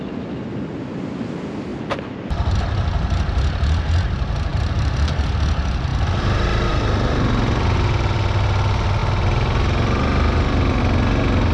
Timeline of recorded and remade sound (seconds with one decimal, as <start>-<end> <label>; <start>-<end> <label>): 0.0-4.5 recorded; 4.5-5.2 remade; 5.2-11.5 recorded